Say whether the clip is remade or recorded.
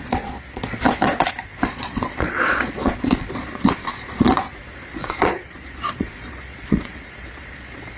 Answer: remade